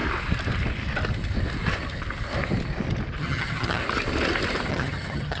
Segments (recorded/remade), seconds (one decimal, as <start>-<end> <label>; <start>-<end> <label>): 0.0-3.2 recorded; 3.2-3.8 remade; 3.8-4.7 recorded; 4.7-5.4 remade